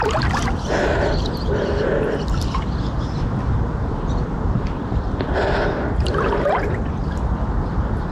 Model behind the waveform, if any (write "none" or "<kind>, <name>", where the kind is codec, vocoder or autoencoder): none